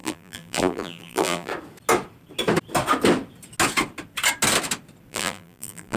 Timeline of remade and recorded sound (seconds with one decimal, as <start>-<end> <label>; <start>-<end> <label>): 0.0-1.5 remade; 1.5-5.1 recorded; 5.1-6.0 remade